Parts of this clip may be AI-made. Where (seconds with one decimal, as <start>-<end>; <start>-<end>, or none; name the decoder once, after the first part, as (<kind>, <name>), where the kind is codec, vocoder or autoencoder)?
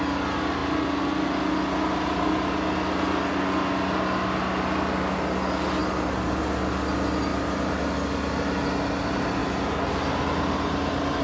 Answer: 5.8-6.4 (vocoder, BigVGAN v2); 7.3-7.8